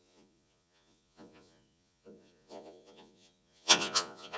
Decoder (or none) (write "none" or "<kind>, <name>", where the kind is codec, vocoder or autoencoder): vocoder, Vocos